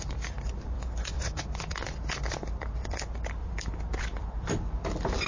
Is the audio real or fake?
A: fake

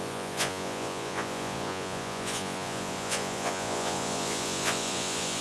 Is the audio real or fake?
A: fake